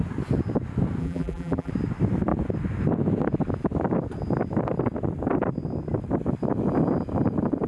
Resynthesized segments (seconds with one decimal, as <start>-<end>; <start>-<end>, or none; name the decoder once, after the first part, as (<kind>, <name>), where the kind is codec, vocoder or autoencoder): 1.0-1.7 (vocoder, BigVGAN v2)